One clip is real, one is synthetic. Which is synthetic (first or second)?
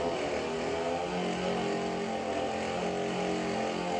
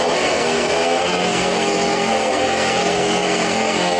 second